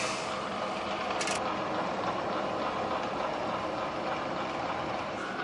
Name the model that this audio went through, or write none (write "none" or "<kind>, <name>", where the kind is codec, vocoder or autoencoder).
none